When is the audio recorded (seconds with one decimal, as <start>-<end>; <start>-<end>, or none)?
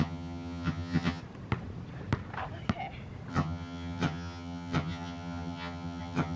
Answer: 1.2-3.3